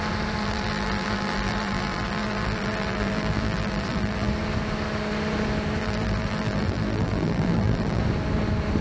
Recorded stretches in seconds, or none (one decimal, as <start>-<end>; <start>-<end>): 0.0-0.4; 4.3-5.8; 8.0-8.8